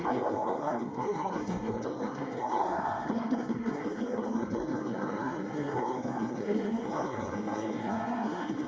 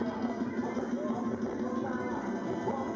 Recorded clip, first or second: second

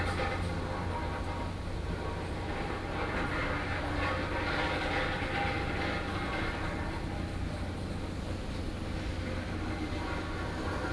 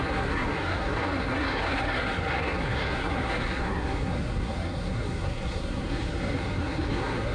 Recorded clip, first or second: first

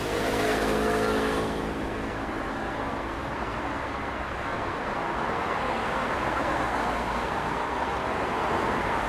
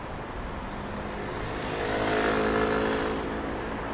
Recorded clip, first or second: second